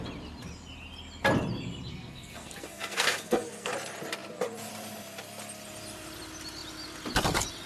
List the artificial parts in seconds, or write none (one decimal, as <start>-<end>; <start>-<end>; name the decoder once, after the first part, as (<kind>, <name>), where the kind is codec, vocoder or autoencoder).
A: 1.9-3.7 (codec, SNAC)